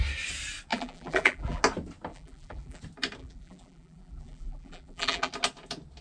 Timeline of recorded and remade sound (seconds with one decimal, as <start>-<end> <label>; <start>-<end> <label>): 0.0-0.7 recorded; 0.7-1.6 remade; 1.6-2.1 recorded; 2.1-2.8 remade; 2.8-3.2 recorded; 3.2-5.3 remade; 5.3-6.0 recorded

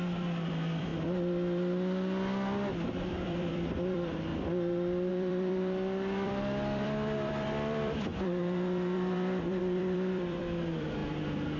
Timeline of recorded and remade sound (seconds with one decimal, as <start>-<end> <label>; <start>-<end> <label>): 0.0-0.9 remade; 0.9-3.1 recorded; 3.1-4.3 remade; 4.3-5.1 recorded; 5.1-11.0 remade; 11.0-11.6 recorded

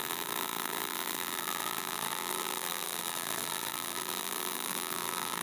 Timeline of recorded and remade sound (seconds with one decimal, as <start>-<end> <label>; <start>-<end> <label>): 0.0-5.4 remade

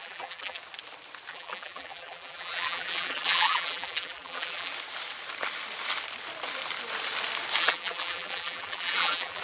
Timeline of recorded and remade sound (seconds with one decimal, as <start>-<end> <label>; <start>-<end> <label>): 0.0-0.6 remade; 0.6-1.3 recorded; 1.3-4.7 remade; 4.7-7.6 recorded; 7.6-9.4 remade

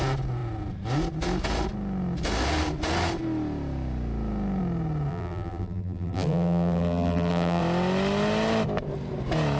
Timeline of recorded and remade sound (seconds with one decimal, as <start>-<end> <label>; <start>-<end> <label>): 0.0-5.1 recorded; 5.1-7.6 remade; 7.6-9.6 recorded

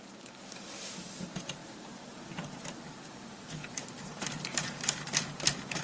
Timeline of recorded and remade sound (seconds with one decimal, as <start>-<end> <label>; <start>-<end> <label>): 0.0-5.8 remade

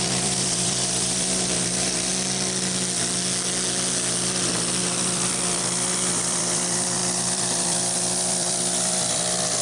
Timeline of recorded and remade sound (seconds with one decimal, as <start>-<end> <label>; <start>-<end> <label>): 0.0-2.1 remade; 2.1-4.8 recorded; 4.8-9.6 remade

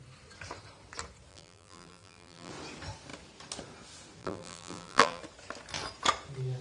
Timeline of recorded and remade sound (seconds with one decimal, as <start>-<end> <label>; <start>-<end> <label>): 0.0-1.3 recorded; 1.3-2.5 remade; 2.5-4.2 recorded; 4.2-5.2 remade; 5.2-6.6 recorded